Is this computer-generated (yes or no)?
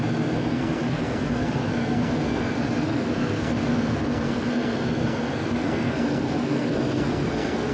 yes